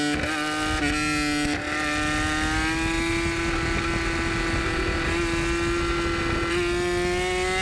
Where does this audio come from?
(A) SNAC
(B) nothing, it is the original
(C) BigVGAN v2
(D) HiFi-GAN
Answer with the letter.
B